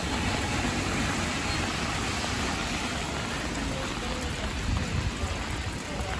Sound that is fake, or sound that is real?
real